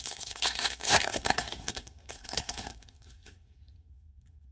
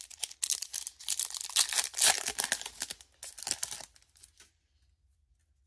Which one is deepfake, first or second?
first